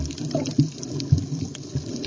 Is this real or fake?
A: real